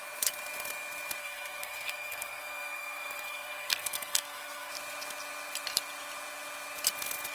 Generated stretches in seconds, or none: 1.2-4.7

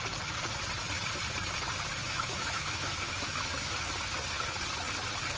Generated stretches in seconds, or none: 2.0-3.8

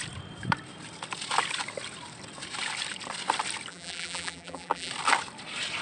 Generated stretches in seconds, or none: 3.7-4.9

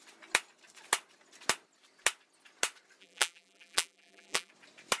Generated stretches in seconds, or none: 3.0-4.5

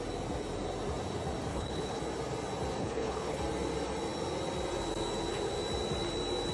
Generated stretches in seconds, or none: 1.5-2.0; 2.8-3.4

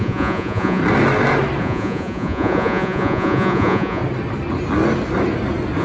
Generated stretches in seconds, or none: 0.0-0.8; 1.6-4.0